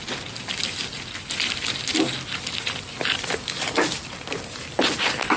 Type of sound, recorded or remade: recorded